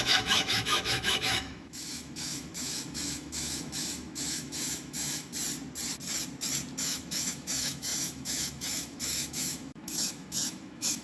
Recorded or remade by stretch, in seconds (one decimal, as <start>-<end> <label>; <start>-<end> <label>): 0.0-5.3 remade; 5.3-6.8 recorded; 6.8-11.0 remade